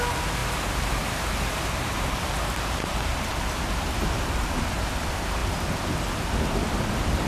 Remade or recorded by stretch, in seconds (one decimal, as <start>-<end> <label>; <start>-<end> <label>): 0.0-0.4 recorded; 0.4-4.7 remade; 4.7-7.3 recorded